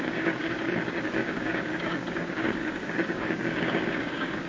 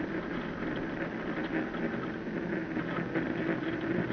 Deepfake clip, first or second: first